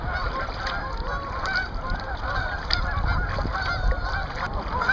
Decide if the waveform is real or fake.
real